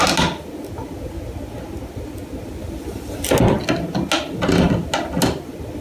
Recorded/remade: recorded